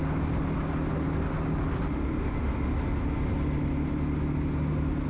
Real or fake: real